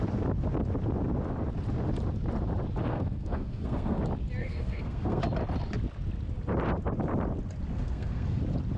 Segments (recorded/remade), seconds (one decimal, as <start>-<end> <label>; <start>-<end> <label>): 0.0-2.9 recorded; 2.9-4.0 remade; 4.0-4.4 recorded; 4.4-5.2 remade; 5.2-7.7 recorded; 7.7-8.4 remade; 8.4-8.8 recorded